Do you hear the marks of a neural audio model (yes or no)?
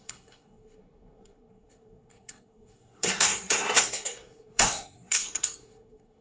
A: yes